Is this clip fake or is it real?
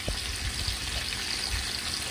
real